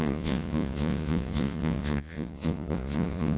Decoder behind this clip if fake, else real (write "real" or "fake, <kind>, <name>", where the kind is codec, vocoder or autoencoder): fake, vocoder, Vocos